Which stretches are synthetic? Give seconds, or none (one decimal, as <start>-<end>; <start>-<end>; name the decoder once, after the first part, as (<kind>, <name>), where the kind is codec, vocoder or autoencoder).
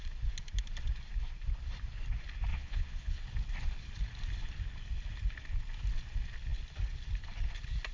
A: 2.5-3.2 (vocoder, Vocos)